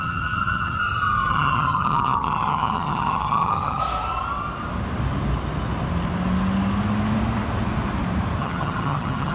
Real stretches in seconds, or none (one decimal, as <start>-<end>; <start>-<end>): 0.8-1.3; 3.8-8.4